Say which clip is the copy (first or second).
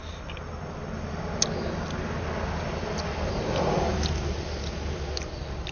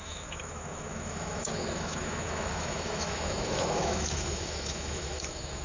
second